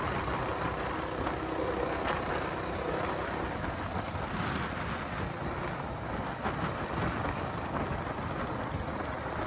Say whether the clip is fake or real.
real